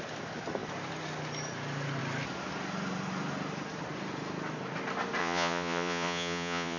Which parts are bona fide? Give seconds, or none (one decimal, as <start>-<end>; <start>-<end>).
0.0-5.2